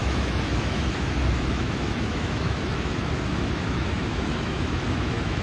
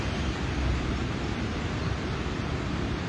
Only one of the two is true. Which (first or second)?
second